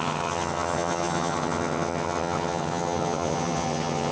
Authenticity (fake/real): fake